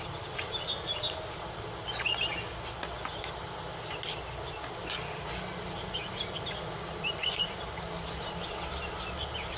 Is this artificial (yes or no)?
no